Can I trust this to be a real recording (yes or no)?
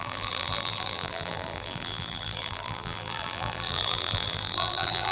no